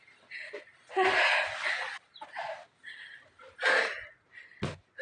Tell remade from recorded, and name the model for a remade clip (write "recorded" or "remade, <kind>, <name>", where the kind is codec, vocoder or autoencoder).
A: recorded